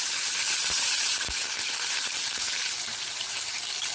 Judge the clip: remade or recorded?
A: remade